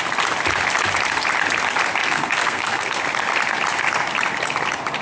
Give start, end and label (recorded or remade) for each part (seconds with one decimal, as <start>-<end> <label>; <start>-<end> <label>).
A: 0.0-2.0 recorded; 2.0-3.0 remade; 3.0-5.0 recorded